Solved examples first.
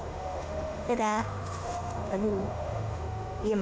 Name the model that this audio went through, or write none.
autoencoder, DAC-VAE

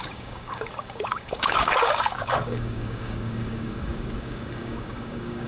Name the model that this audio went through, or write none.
codec, DAC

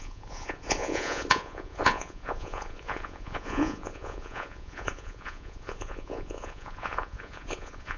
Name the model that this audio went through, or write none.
vocoder, Vocos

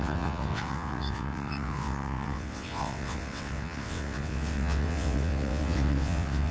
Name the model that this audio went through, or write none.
vocoder, WaveNeXt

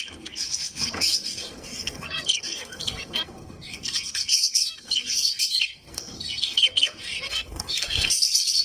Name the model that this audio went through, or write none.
codec, SNAC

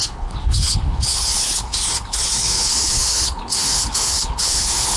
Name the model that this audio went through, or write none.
codec, HILCodec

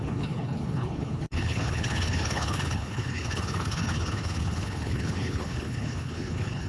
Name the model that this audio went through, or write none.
codec, HILCodec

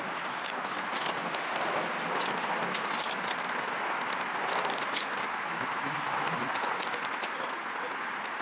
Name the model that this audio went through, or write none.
none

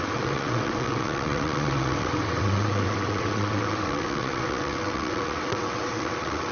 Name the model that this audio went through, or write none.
vocoder, WaveNeXt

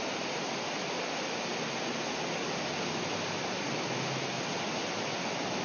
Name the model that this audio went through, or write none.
none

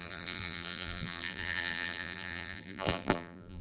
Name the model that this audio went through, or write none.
vocoder, BigVGAN v2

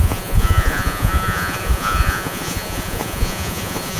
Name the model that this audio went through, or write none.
vocoder, Vocos